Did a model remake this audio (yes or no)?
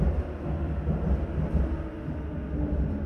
no